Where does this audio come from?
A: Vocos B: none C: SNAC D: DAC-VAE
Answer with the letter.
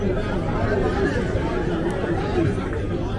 B